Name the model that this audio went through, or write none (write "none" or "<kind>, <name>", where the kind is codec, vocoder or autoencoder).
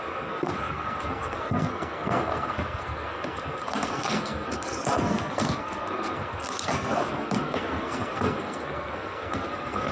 codec, SNAC